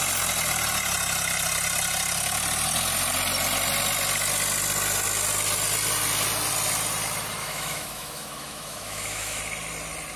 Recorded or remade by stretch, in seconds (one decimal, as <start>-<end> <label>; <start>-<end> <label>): 0.0-7.4 recorded; 7.4-9.4 remade; 9.4-10.2 recorded

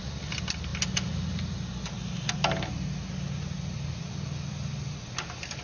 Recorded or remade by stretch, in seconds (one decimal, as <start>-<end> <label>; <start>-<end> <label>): 0.0-5.6 recorded

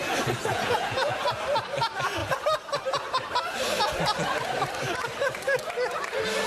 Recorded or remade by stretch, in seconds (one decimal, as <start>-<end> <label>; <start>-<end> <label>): 0.0-0.5 recorded; 0.5-1.2 remade; 1.2-6.5 recorded

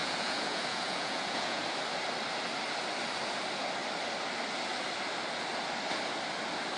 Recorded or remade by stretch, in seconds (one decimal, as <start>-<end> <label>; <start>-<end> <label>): 0.0-1.6 remade; 1.6-6.8 recorded

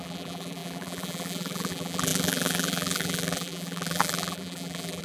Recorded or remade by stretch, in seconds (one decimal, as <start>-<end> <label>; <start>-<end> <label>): 0.0-5.0 remade

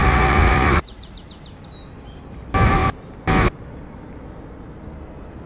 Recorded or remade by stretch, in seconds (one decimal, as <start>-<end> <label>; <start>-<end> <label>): 0.0-1.2 remade; 1.2-5.5 recorded

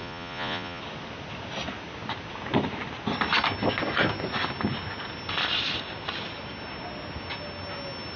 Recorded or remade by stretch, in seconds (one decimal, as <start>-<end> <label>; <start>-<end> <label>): 0.0-0.8 remade; 0.8-8.2 recorded

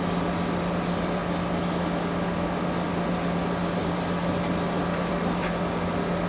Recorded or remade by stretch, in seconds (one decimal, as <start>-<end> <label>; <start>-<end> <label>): 0.0-1.2 remade; 1.2-2.9 recorded; 2.9-6.3 remade